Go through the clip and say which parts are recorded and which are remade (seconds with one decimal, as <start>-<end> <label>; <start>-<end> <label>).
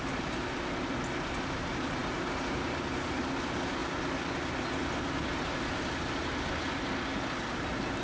0.0-8.0 recorded